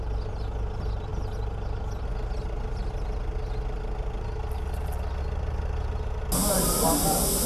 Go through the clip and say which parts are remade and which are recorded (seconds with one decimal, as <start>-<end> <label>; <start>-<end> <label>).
0.0-7.5 recorded

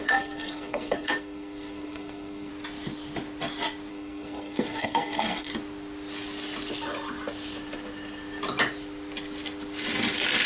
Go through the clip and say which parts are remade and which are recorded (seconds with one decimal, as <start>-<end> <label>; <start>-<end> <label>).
0.0-2.5 remade; 2.5-3.9 recorded; 3.9-5.5 remade; 5.5-10.5 recorded

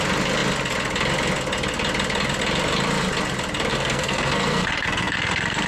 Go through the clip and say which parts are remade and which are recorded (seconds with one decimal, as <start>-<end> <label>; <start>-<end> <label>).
0.0-3.7 recorded; 3.7-5.7 remade

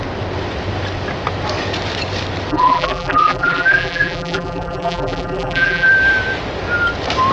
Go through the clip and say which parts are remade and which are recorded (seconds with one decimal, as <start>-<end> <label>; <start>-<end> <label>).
0.0-2.5 recorded; 2.5-5.9 remade; 5.9-7.3 recorded

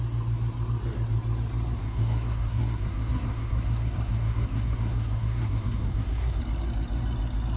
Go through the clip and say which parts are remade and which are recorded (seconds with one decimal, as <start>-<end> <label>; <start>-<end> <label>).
0.0-1.8 recorded; 1.8-6.4 remade; 6.4-7.6 recorded